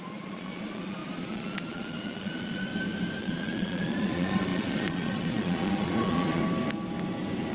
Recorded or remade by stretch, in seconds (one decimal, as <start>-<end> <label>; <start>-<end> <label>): 0.0-2.7 remade; 2.7-3.2 recorded; 3.2-6.4 remade; 6.4-7.5 recorded